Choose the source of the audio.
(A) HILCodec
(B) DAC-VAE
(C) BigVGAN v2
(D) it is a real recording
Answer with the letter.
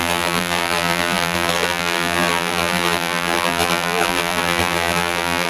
C